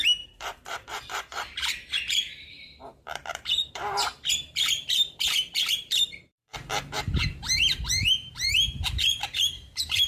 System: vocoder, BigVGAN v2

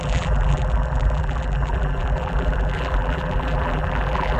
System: vocoder, BigVGAN v2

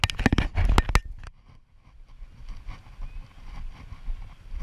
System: none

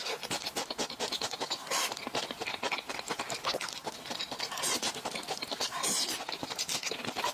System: none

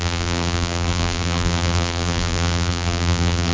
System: vocoder, BigVGAN v2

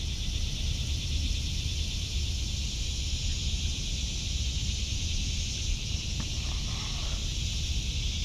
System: none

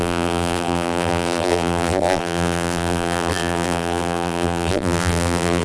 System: vocoder, BigVGAN v2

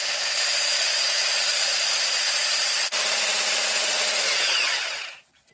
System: vocoder, BigVGAN v2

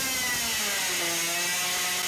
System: none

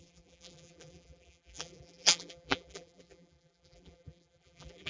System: vocoder, BigVGAN v2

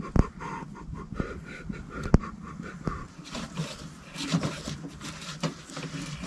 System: vocoder, BigVGAN v2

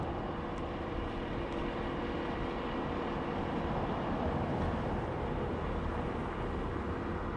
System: none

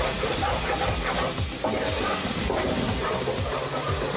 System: none